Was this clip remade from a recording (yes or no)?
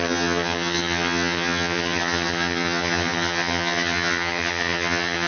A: yes